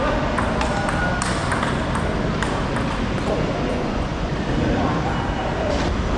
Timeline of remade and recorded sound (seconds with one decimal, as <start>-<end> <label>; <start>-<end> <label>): 0.0-3.7 recorded; 3.7-4.3 remade; 4.3-6.2 recorded